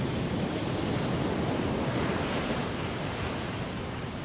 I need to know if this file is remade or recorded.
remade